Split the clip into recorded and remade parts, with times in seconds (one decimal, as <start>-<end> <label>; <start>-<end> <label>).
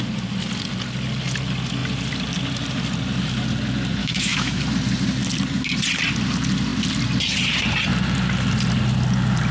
0.0-4.0 recorded; 4.0-4.6 remade; 4.6-9.5 recorded